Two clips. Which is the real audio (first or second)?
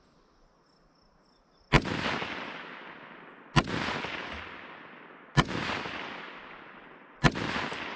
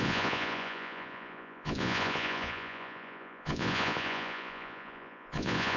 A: first